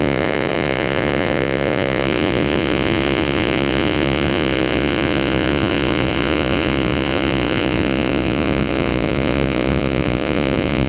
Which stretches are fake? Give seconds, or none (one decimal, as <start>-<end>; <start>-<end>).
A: 0.0-10.9